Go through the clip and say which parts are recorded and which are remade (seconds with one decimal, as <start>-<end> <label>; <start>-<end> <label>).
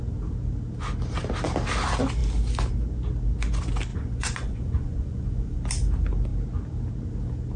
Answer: 0.0-3.9 recorded; 3.9-5.6 remade; 5.6-7.6 recorded